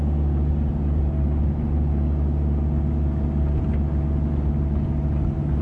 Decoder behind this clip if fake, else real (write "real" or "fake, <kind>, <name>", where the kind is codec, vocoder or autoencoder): real